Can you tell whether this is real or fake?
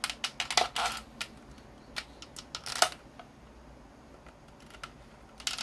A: real